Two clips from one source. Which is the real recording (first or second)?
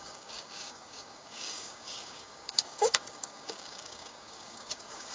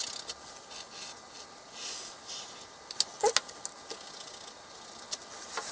second